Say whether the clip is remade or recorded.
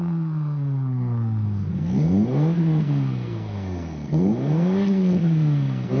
remade